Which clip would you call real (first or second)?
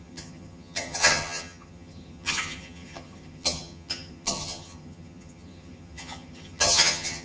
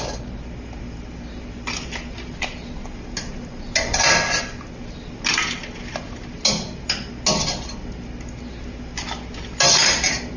second